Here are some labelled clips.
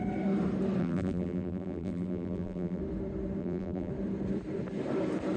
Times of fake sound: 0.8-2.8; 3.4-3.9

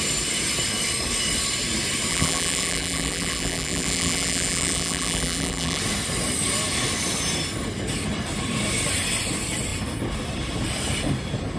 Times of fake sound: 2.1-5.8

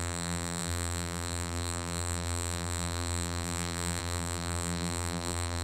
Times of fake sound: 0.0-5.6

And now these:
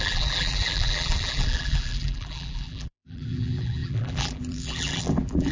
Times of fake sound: 0.0-5.5

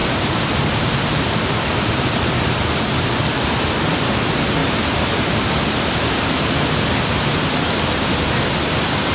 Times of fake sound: 0.0-2.4; 4.6-6.0